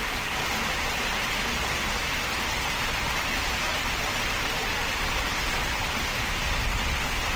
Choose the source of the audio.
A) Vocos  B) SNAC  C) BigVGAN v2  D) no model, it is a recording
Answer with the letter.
D